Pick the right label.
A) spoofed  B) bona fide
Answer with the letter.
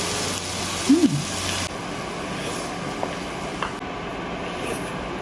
B